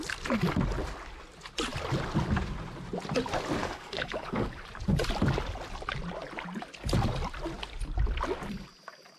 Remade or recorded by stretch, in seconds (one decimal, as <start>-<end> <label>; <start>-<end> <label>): 0.0-3.6 recorded; 3.6-4.6 remade; 4.6-9.2 recorded